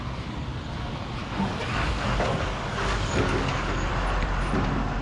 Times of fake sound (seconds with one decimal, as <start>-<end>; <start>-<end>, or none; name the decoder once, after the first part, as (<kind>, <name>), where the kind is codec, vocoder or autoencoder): 1.2-3.9 (codec, DAC)